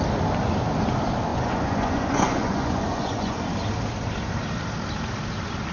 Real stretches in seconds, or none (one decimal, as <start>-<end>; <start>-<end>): 0.0-1.3; 3.4-5.7